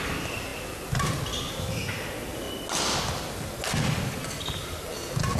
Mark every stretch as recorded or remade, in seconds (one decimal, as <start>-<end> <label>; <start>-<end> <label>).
0.0-5.4 recorded